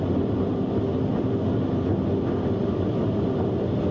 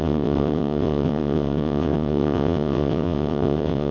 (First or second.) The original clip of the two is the first